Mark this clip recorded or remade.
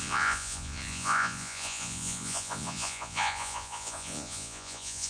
remade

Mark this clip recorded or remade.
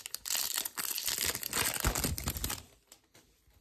recorded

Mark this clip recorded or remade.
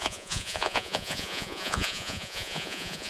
remade